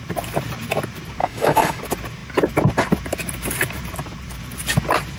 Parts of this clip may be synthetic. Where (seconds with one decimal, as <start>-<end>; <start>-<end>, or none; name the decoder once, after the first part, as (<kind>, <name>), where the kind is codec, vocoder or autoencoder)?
1.2-1.8 (autoencoder, DAC-VAE)